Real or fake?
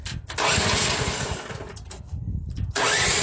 real